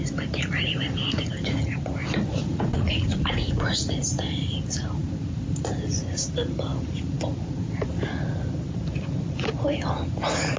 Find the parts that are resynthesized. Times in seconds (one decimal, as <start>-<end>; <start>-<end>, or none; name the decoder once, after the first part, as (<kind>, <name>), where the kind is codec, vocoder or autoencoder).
2.3-4.0 (vocoder, Vocos)